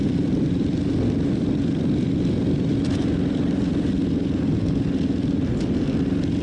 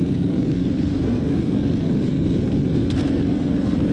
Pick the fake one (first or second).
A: second